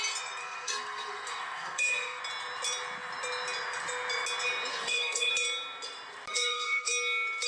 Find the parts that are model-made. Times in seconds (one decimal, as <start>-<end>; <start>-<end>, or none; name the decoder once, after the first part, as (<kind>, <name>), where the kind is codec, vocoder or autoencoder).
0.4-2.2 (codec, SNAC); 4.7-5.3; 6.3-6.9